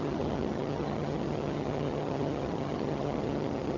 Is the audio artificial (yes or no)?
yes